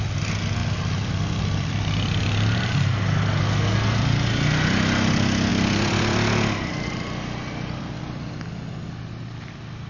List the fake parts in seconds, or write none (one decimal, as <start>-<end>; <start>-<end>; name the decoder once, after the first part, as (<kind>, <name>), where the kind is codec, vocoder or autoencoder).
0.6-2.3 (vocoder, BigVGAN v2); 5.5-8.4